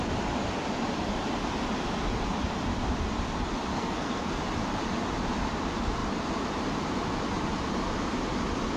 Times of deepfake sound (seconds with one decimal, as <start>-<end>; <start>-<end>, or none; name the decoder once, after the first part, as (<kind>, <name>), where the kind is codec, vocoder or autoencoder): 3.7-4.3 (codec, SNAC)